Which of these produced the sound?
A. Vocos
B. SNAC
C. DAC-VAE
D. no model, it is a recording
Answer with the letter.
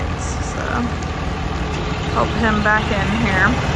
D